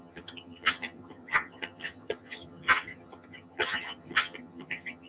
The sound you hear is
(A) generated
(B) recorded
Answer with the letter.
A